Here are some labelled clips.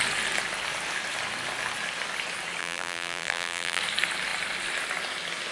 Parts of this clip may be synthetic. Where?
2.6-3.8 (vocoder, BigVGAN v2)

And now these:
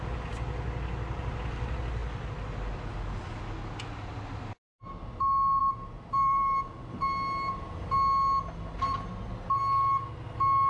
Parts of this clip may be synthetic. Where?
5.6-6.7 (vocoder, BigVGAN v2)

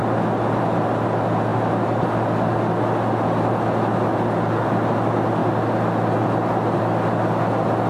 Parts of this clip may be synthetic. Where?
none

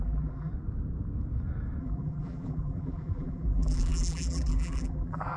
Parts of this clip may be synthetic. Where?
0.0-0.5 (vocoder, BigVGAN v2); 1.8-5.4

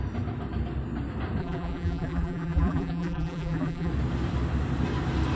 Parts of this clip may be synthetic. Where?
1.4-3.9 (vocoder, BigVGAN v2)

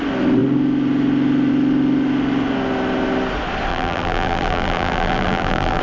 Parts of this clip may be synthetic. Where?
3.7-5.8 (vocoder, BigVGAN v2)